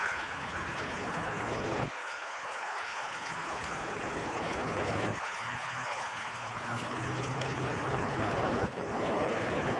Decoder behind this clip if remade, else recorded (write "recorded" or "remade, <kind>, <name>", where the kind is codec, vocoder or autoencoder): remade, codec, HILCodec